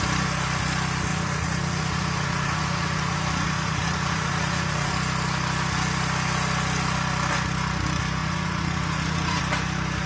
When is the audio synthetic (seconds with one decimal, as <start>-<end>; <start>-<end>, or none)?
1.1-4.9; 8.2-9.4